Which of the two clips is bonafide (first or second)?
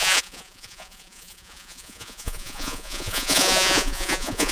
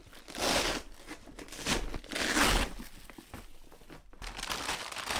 second